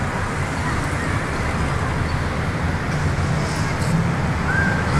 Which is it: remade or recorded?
recorded